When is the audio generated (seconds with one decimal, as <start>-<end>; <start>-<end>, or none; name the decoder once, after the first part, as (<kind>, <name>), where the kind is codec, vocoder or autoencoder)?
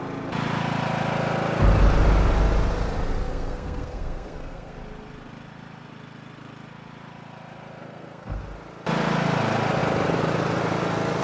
3.3-4.8 (codec, SNAC); 7.8-8.4